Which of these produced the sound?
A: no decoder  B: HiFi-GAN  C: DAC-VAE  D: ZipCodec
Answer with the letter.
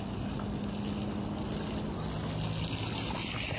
A